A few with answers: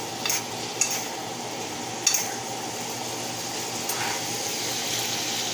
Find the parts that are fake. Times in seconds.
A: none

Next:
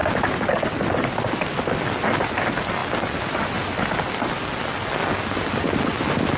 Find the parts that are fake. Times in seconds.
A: none